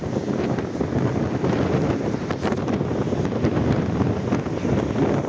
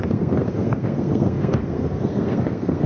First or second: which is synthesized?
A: second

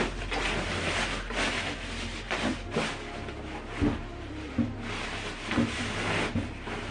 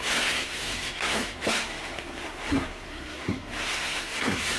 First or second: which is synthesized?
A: second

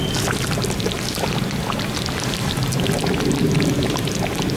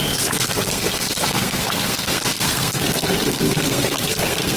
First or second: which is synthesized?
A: second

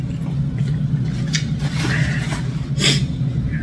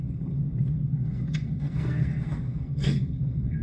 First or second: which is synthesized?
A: second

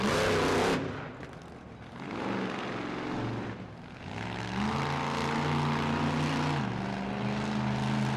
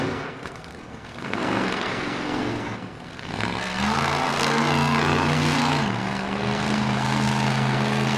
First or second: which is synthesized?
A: second